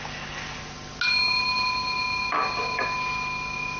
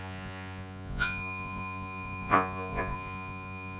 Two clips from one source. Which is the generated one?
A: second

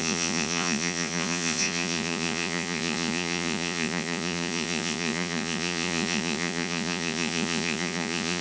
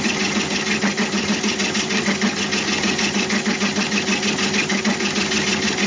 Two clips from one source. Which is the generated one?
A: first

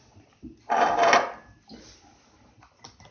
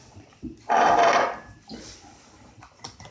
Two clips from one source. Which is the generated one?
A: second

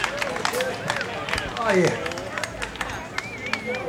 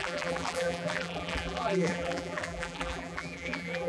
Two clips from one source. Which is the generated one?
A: second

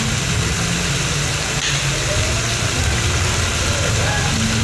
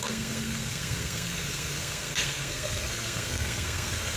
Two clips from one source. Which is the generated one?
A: second